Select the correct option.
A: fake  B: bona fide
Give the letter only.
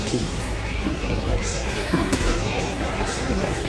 A